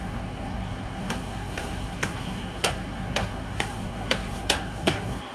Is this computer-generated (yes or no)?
yes